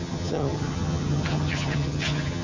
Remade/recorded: remade